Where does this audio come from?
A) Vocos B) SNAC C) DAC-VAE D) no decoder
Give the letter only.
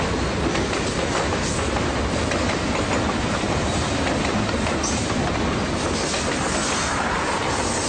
D